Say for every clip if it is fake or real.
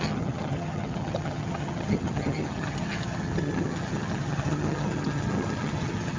fake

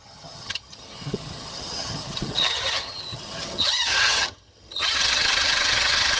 fake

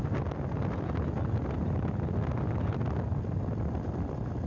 real